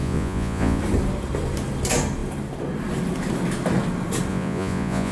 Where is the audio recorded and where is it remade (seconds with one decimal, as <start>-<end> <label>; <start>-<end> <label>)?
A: 0.0-0.8 remade; 0.8-4.3 recorded; 4.3-5.1 remade